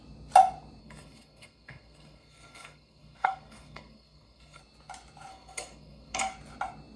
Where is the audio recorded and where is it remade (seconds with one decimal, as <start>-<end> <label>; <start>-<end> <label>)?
0.0-0.8 recorded; 0.8-4.6 remade; 4.6-5.3 recorded; 5.3-6.3 remade; 6.3-7.0 recorded